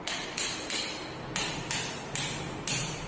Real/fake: real